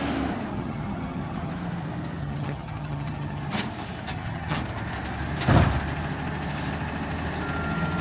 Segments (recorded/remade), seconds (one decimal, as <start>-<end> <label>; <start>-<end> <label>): 0.0-0.5 recorded; 0.5-1.5 remade; 1.5-2.2 recorded; 2.2-3.4 remade; 3.4-4.1 recorded; 4.1-4.6 remade; 4.6-8.0 recorded